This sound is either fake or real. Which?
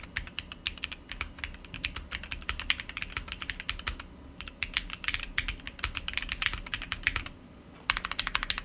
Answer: real